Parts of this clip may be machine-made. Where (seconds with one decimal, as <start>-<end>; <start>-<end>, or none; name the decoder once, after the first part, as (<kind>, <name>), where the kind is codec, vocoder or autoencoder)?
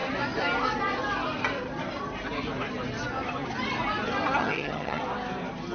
4.4-5.0 (vocoder, HiFi-GAN)